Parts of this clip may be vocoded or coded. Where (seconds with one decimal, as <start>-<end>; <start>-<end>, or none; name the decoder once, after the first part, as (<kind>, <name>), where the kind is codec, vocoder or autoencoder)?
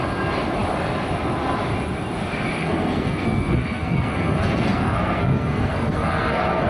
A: 2.6-6.7 (codec, SNAC)